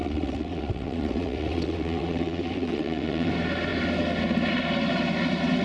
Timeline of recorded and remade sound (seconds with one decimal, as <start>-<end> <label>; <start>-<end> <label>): 0.0-3.3 remade; 3.3-5.6 recorded